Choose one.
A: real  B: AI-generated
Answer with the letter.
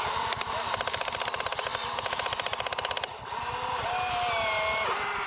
A